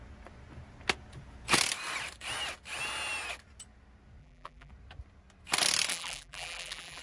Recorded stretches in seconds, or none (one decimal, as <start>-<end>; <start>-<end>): 0.0-4.2; 4.7-5.9